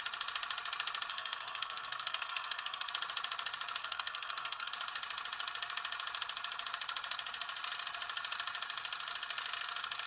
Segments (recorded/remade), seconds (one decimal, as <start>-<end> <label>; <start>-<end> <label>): 0.0-1.1 recorded; 1.1-2.9 remade; 2.9-3.8 recorded; 3.8-4.7 remade; 4.7-10.1 recorded